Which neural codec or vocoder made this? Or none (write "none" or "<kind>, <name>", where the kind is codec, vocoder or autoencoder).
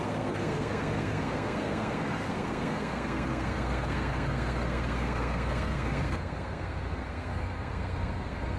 codec, SNAC